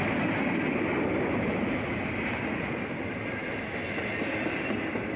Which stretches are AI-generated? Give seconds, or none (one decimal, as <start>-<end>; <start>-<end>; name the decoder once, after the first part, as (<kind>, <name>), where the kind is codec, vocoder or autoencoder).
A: none